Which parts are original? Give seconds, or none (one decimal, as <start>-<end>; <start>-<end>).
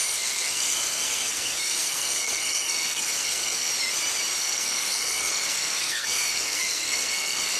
3.7-4.4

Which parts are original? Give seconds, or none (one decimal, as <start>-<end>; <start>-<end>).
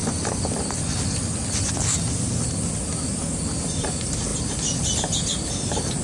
0.0-6.0